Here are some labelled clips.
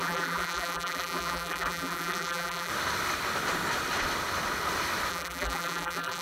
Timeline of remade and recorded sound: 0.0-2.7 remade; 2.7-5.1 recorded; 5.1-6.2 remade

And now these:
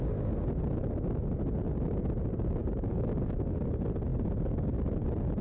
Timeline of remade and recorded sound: 0.0-2.6 recorded; 2.6-3.6 remade; 3.6-5.4 recorded